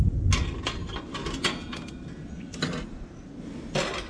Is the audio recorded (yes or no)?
yes